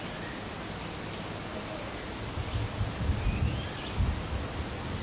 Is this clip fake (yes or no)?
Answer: no